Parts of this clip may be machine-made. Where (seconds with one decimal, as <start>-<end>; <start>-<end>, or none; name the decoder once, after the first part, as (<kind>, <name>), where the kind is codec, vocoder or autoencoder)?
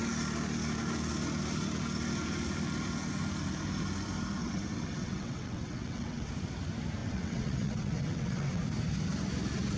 4.4-6.3 (vocoder, WaveNeXt); 7.0-8.6